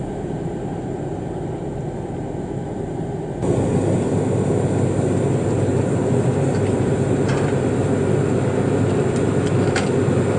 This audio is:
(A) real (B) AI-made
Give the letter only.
A